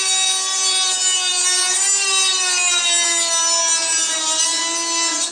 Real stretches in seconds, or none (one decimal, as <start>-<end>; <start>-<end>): 0.0-5.3